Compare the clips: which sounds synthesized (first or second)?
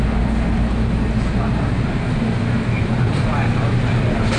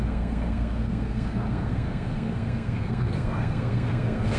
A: second